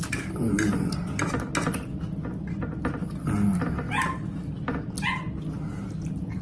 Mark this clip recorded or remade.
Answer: recorded